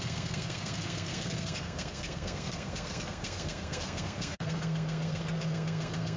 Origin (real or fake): fake